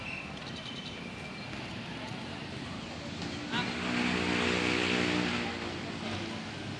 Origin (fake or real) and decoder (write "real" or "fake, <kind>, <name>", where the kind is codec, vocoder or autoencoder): real